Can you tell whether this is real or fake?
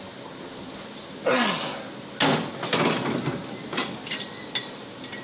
real